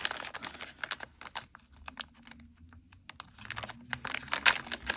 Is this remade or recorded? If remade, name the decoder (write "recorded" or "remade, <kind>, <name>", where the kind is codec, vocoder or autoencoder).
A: recorded